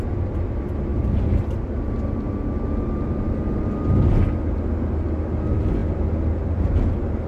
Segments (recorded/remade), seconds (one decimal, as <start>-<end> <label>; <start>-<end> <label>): 0.0-7.3 recorded